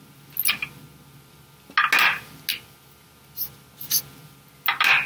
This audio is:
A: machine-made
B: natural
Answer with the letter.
B